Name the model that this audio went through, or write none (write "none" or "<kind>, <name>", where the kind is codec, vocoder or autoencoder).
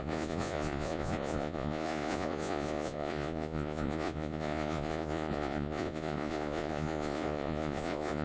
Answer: vocoder, Vocos